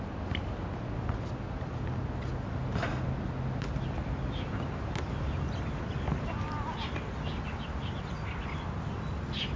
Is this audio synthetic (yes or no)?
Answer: no